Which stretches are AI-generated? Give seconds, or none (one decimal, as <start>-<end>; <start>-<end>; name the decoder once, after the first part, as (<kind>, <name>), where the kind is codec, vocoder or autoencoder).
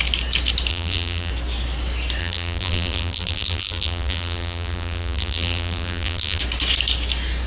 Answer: 0.7-1.3 (vocoder, BigVGAN v2); 2.2-6.4